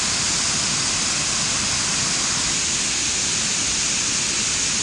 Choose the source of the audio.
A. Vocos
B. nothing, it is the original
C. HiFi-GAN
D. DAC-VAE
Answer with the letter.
B